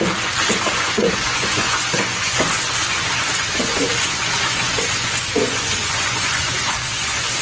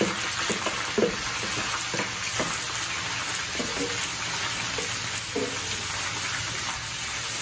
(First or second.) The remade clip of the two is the first